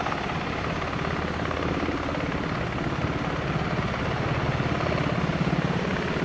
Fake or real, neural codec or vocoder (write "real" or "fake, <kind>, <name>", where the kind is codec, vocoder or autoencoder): real